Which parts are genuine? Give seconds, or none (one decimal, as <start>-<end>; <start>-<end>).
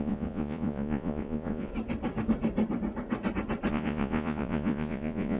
1.7-3.7